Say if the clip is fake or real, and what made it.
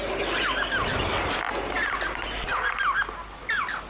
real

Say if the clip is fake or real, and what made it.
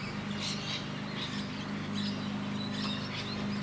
real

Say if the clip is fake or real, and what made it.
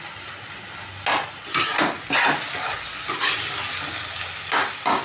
real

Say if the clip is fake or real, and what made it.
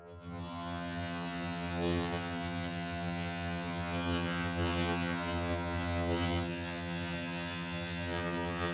fake, vocoder, HiFi-GAN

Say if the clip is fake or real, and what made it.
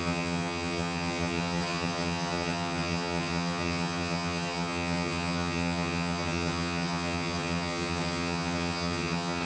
fake, vocoder, HiFi-GAN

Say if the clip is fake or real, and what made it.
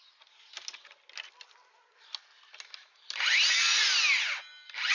real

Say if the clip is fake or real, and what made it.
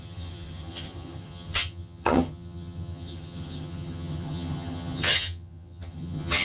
fake, vocoder, HiFi-GAN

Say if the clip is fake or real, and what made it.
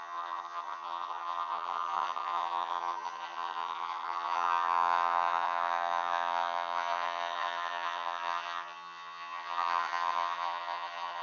fake, vocoder, HiFi-GAN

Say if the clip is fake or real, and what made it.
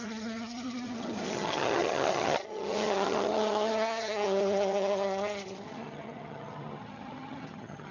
fake, vocoder, HiFi-GAN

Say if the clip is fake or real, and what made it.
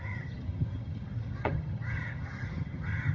fake, vocoder, HiFi-GAN